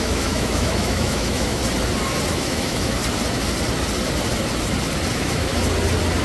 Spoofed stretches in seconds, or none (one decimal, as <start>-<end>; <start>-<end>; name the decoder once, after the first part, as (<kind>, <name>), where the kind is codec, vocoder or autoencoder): 0.0-1.6 (autoencoder, DAC-VAE); 2.3-3.0; 5.1-5.5